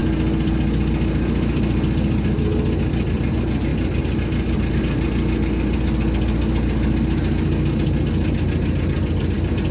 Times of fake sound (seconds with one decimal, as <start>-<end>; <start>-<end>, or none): none

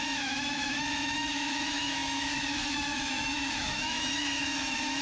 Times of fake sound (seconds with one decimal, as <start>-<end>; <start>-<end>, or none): 0.0-5.0

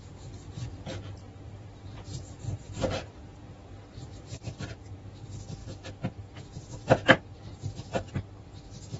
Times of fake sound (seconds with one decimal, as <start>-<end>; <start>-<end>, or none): 1.2-5.1; 5.6-7.7